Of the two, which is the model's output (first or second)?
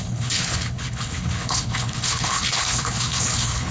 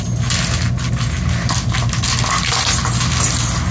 first